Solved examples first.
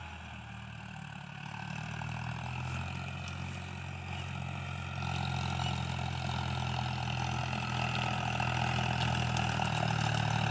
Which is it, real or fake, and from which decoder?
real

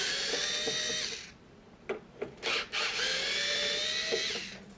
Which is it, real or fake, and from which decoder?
real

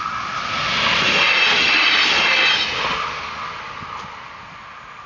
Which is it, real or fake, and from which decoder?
real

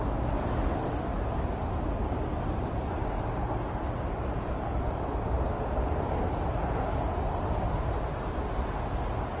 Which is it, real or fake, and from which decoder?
real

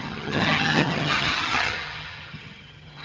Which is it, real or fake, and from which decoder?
fake, vocoder, HiFi-GAN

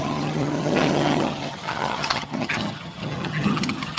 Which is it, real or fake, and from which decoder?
fake, vocoder, HiFi-GAN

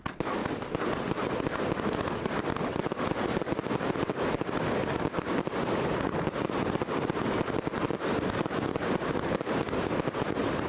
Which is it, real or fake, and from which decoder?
real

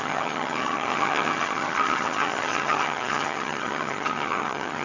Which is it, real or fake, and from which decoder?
fake, vocoder, HiFi-GAN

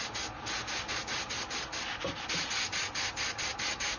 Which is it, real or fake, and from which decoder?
real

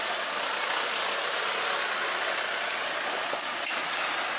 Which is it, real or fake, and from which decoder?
real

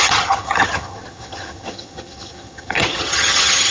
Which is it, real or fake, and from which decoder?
fake, vocoder, HiFi-GAN